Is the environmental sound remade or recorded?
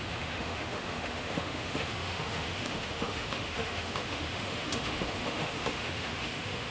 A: remade